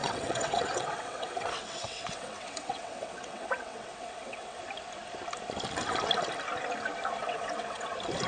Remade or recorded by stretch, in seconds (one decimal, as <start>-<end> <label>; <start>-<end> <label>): 0.0-4.6 remade; 4.6-7.2 recorded; 7.2-7.9 remade; 7.9-8.3 recorded